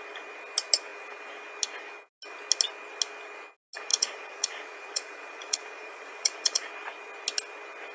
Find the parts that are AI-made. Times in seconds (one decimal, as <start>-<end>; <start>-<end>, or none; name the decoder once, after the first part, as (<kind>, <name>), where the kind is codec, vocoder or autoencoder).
3.9-6.7 (vocoder, Vocos)